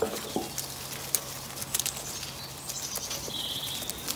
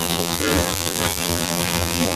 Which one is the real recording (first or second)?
first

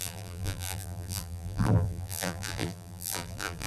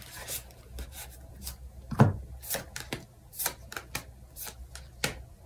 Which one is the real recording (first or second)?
second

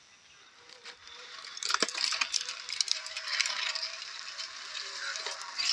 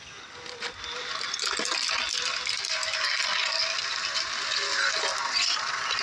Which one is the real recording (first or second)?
second